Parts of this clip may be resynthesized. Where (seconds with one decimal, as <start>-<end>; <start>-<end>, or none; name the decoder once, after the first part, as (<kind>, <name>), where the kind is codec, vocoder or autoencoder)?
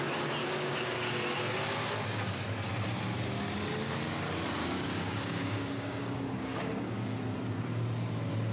0.4-1.1 (codec, DAC); 4.6-6.9